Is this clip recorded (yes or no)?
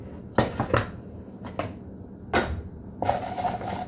yes